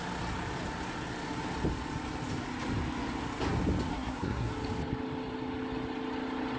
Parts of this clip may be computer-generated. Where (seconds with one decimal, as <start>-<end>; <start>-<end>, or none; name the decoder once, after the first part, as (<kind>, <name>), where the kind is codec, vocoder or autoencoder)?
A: 3.9-4.5 (codec, SNAC)